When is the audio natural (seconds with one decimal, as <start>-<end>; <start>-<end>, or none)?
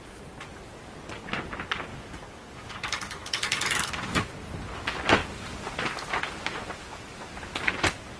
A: 0.0-1.9; 3.9-8.2